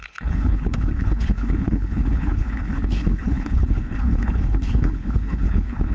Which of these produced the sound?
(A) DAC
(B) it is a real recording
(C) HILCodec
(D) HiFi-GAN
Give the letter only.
C